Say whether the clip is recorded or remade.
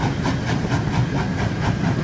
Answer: recorded